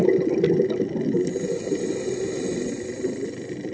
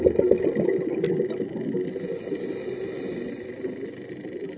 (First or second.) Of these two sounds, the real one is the second